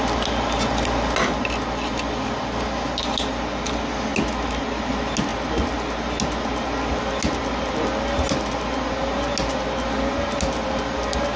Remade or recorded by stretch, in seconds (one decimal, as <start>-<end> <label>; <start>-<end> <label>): 0.0-11.4 recorded